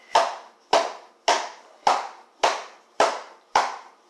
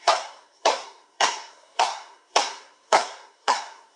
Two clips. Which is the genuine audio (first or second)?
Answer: first